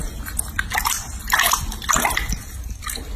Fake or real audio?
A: real